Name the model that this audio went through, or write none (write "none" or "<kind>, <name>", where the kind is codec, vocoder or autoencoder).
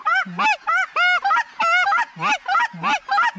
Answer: none